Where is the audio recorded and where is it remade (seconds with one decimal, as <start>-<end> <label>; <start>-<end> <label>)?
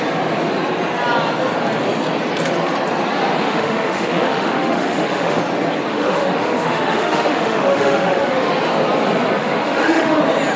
0.0-3.4 recorded; 3.4-5.4 remade; 5.4-5.9 recorded; 5.9-8.5 remade; 8.5-9.4 recorded; 9.4-10.2 remade; 10.2-10.6 recorded